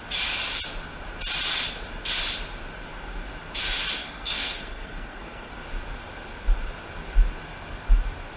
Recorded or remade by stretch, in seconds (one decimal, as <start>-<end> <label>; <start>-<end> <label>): 0.0-4.0 recorded; 4.0-5.5 remade; 5.5-8.4 recorded